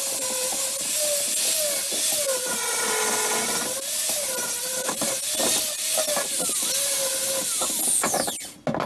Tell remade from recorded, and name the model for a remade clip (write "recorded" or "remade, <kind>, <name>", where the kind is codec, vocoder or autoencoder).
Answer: recorded